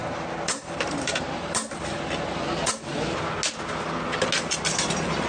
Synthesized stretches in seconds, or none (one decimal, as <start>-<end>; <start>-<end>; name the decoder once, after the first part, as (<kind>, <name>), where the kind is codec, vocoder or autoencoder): 0.5-2.9 (vocoder, BigVGAN v2); 4.6-5.3